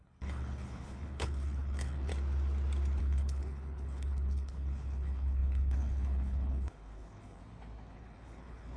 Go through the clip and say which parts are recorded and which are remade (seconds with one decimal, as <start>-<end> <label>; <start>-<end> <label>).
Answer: 0.0-2.1 remade; 2.1-3.0 recorded; 3.0-7.4 remade; 7.4-7.9 recorded; 7.9-8.8 remade